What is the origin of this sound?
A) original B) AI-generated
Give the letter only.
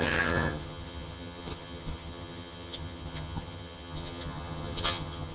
B